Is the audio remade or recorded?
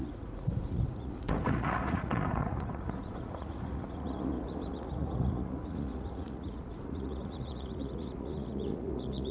remade